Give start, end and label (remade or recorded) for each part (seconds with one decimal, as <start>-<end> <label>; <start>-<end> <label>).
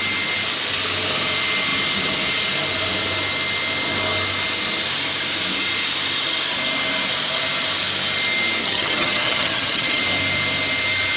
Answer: 0.0-8.6 recorded; 8.6-10.0 remade; 10.0-11.2 recorded